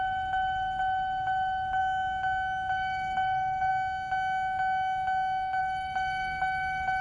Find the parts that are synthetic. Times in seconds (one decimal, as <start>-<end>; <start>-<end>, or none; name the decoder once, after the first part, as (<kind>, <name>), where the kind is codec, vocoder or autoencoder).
0.0-1.8 (autoencoder, DAC-VAE); 2.7-3.7; 5.6-7.0